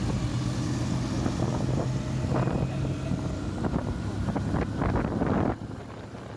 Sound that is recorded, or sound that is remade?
recorded